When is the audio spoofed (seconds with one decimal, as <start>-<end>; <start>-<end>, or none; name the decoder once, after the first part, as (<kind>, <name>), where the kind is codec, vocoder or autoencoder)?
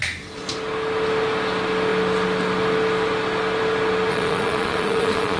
4.1-5.4 (vocoder, Vocos)